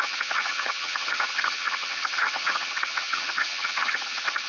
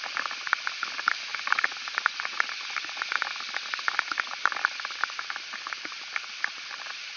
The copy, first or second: first